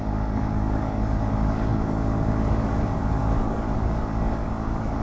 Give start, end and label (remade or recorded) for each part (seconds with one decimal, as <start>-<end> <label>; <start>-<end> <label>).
0.0-5.0 remade